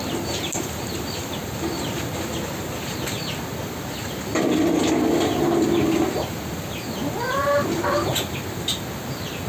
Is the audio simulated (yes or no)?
no